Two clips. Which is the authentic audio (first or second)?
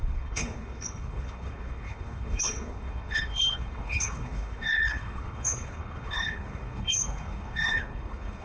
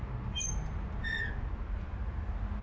second